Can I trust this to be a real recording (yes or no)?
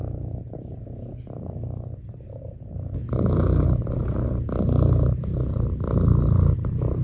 no